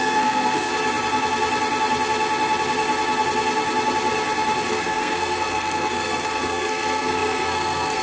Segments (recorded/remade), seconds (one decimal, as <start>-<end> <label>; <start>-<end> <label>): 0.0-0.7 remade; 0.7-4.7 recorded; 4.7-8.0 remade